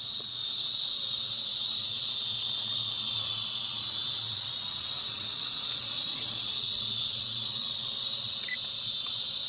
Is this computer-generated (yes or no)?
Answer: yes